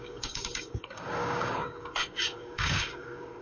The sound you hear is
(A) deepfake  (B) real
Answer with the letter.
A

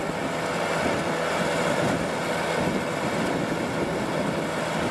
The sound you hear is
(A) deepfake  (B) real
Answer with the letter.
B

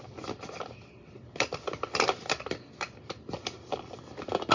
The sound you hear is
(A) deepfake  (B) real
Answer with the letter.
A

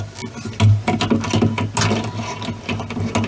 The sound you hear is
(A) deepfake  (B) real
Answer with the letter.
B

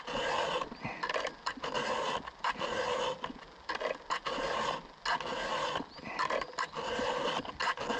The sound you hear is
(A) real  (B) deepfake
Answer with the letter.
A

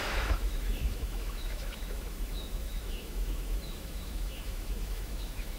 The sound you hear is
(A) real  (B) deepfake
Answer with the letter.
B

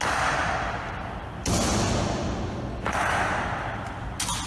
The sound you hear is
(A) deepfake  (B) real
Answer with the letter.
B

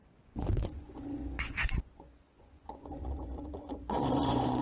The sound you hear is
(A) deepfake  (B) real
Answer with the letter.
A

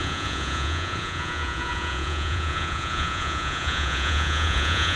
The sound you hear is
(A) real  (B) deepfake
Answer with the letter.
B